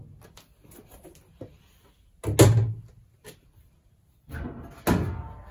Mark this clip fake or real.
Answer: real